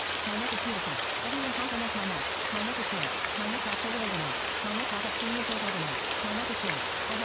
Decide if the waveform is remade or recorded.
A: recorded